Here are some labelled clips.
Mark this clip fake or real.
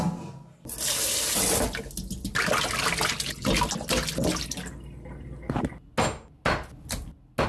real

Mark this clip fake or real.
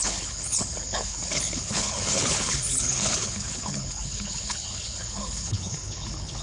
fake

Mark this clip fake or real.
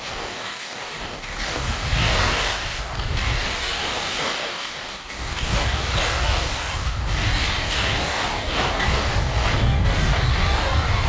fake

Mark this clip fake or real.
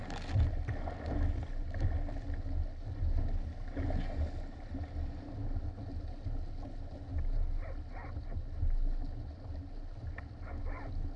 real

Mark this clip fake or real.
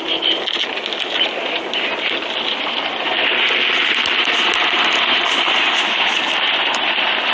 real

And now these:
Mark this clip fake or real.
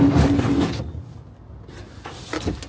real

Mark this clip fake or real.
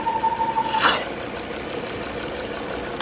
fake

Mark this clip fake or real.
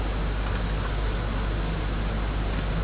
real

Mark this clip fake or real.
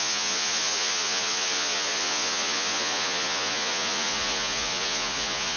fake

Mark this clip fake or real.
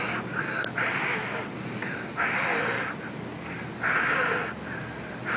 real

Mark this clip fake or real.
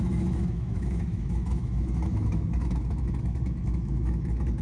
fake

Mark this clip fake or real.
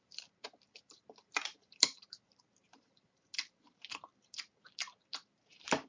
fake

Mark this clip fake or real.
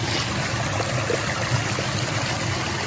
real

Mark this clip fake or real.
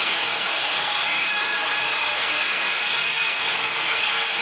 fake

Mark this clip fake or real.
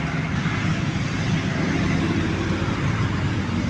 real